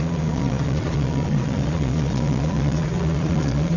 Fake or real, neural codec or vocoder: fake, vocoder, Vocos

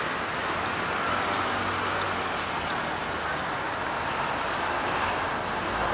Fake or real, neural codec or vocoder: real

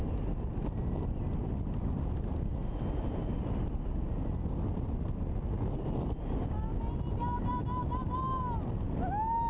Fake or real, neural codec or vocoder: real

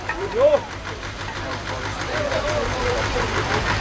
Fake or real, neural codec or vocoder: fake, vocoder, BigVGAN v2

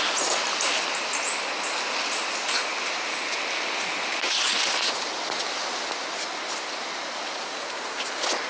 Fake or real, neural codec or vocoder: real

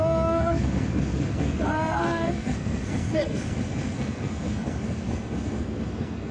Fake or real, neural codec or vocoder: fake, codec, SNAC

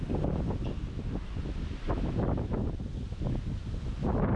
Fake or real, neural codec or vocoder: real